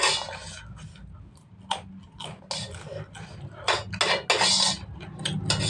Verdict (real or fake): real